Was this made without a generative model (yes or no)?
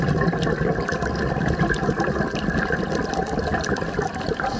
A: yes